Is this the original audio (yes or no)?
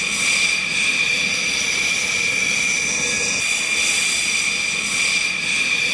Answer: yes